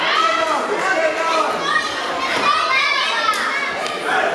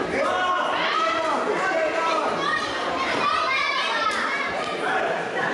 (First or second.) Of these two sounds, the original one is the first